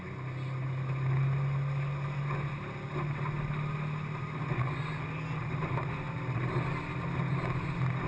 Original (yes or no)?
yes